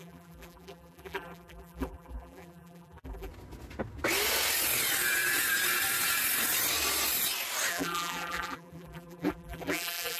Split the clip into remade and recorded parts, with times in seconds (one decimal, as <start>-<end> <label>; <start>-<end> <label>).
0.0-3.3 remade; 3.3-7.7 recorded; 7.7-10.2 remade